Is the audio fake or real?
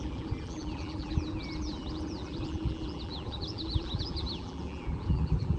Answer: fake